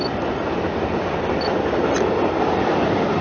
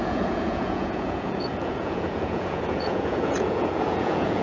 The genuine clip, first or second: first